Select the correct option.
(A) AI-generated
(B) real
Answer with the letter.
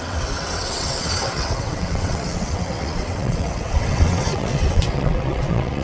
A